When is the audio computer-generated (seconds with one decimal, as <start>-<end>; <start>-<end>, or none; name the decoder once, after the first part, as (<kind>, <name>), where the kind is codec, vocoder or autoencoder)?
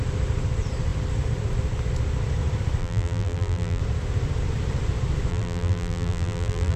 2.8-3.8 (vocoder, BigVGAN v2); 5.3-6.8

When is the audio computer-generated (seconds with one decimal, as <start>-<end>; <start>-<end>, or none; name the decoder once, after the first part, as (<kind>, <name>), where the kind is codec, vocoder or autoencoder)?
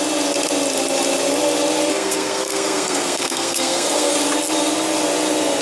1.9-4.1 (codec, SNAC)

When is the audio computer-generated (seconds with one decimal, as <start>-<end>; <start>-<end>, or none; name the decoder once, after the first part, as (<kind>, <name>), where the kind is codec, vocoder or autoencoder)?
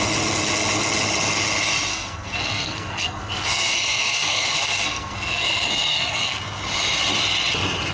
1.9-6.4 (codec, SNAC)